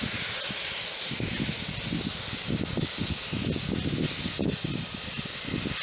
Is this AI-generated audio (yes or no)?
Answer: no